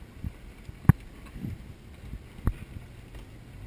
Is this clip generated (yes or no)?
no